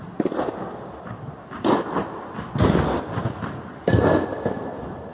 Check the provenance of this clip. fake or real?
real